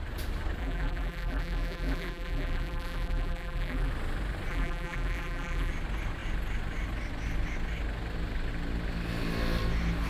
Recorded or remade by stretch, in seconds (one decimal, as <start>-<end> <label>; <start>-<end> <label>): 0.0-0.6 recorded; 0.6-3.9 remade; 3.9-4.5 recorded; 4.5-5.7 remade; 5.7-10.1 recorded